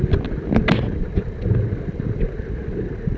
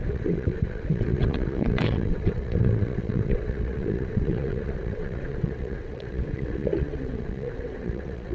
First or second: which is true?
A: first